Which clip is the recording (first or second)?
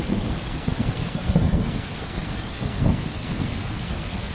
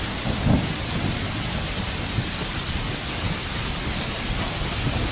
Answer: second